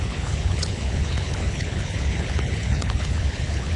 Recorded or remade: remade